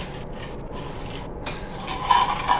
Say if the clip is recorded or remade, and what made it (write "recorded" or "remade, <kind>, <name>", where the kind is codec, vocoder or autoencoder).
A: recorded